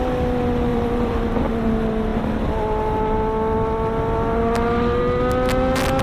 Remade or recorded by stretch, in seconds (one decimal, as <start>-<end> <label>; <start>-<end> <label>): 0.0-0.7 recorded; 0.7-1.7 remade; 1.7-6.0 recorded